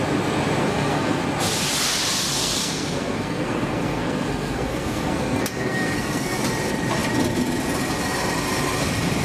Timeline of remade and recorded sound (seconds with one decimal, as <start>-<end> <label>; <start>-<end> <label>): 0.0-0.6 recorded; 0.6-1.2 remade; 1.2-2.4 recorded; 2.4-6.4 remade; 6.4-9.2 recorded